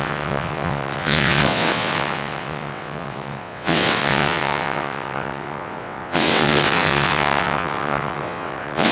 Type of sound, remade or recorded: remade